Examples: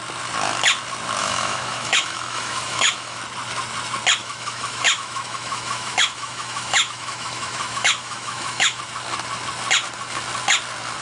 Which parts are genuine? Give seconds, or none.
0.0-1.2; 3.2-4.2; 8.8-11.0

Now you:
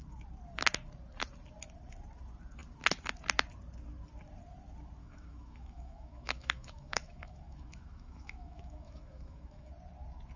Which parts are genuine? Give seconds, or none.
0.0-5.0; 9.7-10.4

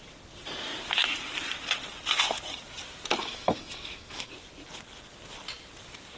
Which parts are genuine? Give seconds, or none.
0.0-3.2; 4.3-6.2

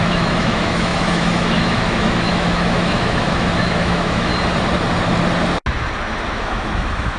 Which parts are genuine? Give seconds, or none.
4.3-6.3

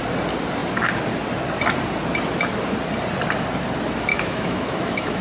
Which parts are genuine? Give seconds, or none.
0.0-4.1

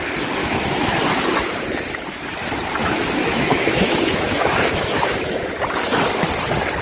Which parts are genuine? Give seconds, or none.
0.0-0.4; 1.0-2.8; 5.4-6.8

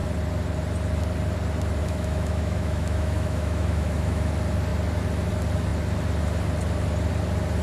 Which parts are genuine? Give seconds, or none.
0.0-1.8; 4.3-7.6